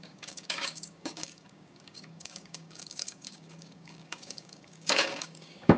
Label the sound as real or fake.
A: fake